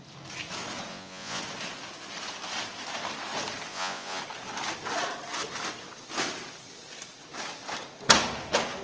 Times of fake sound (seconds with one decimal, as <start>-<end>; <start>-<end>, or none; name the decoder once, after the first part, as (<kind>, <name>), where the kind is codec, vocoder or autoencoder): 0.9-1.4 (vocoder, Vocos); 3.7-4.2